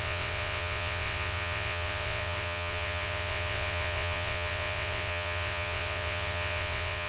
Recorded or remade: remade